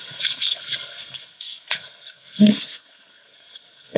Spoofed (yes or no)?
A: yes